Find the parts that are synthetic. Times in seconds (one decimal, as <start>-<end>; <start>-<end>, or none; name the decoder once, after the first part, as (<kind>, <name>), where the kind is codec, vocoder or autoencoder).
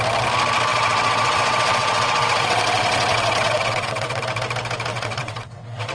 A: 0.7-4.2 (vocoder, WaveNeXt); 4.9-5.9